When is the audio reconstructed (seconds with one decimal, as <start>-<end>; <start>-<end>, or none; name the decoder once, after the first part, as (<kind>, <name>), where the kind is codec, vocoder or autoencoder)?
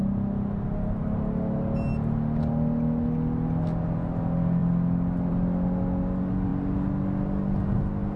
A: none